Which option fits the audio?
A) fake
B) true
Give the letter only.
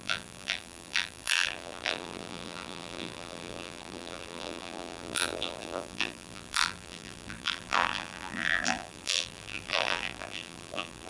A